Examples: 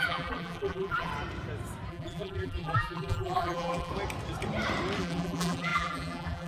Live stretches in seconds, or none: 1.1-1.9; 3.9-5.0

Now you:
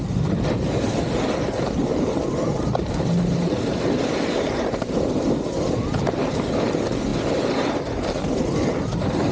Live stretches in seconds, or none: 0.0-1.9; 6.6-9.3

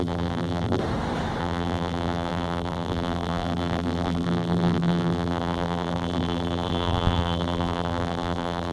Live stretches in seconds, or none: 0.8-1.4